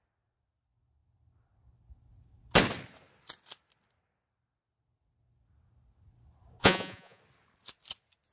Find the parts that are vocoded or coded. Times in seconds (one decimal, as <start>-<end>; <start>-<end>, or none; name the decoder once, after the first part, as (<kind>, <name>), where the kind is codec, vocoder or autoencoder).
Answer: 6.6-7.2 (vocoder, Vocos)